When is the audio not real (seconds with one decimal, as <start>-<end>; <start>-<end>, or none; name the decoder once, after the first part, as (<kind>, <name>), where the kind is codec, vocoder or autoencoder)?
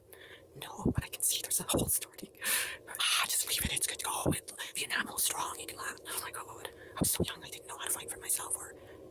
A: 4.2-7.9 (autoencoder, DAC-VAE)